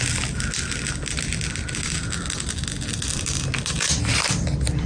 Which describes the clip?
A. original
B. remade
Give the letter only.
A